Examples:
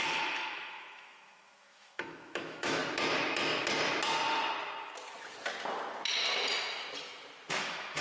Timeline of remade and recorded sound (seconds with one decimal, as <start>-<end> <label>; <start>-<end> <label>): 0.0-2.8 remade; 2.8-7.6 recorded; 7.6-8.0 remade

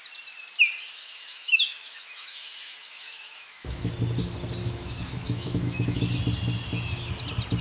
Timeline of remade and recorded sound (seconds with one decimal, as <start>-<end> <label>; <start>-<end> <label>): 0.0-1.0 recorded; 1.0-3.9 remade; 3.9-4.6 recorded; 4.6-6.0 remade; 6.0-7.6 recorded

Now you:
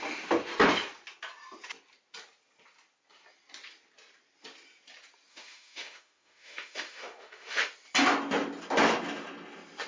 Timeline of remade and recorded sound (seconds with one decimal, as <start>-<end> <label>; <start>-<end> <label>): 0.0-5.3 recorded; 5.3-7.6 remade; 7.6-9.9 recorded

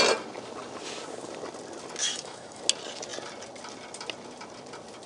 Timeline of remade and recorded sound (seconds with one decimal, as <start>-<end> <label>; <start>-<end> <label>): 0.0-2.0 recorded; 2.0-2.6 remade; 2.6-5.1 recorded

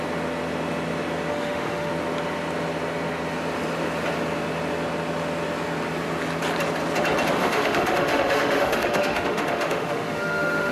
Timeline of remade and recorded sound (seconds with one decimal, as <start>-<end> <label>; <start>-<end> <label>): 0.0-1.3 recorded; 1.3-1.9 remade; 1.9-7.4 recorded; 7.4-10.7 remade

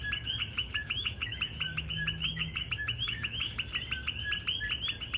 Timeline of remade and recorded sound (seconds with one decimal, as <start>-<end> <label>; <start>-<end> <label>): 0.0-0.4 recorded; 0.4-3.5 remade; 3.5-5.2 recorded